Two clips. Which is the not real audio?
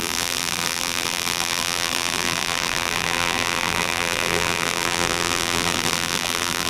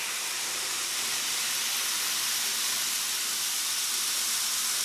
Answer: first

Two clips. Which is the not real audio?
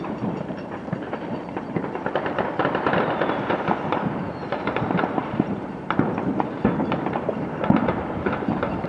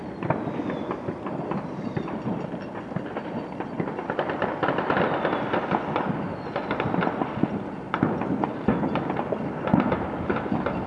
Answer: first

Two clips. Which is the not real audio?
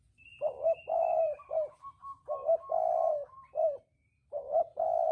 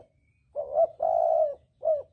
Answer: first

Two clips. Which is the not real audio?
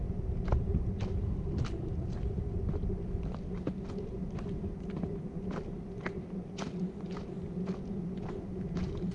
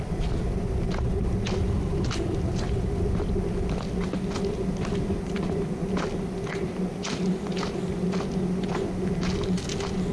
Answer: first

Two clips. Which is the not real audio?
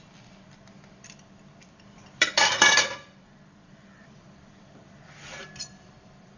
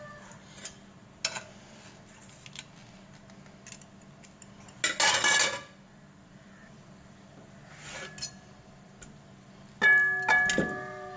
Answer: first